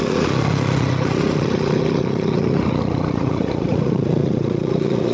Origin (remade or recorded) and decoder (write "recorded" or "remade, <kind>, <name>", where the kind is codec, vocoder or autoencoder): remade, vocoder, Vocos